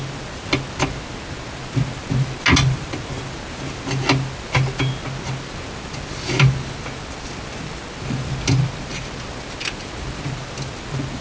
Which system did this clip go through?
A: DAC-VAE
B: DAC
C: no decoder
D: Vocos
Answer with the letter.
C